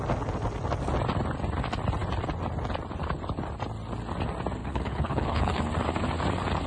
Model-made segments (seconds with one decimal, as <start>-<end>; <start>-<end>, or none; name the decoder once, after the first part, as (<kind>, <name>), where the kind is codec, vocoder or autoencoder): 4.6-5.6 (codec, HILCodec)